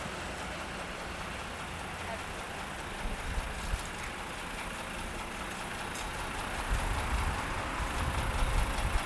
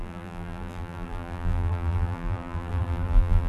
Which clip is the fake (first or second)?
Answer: second